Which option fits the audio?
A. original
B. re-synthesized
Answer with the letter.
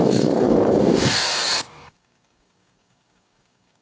B